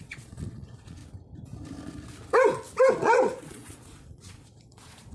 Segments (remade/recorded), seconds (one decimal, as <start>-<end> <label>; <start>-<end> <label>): 0.0-1.0 remade; 1.0-2.9 recorded; 2.9-5.1 remade